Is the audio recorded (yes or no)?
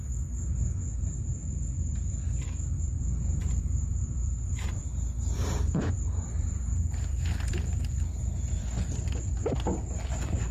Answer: no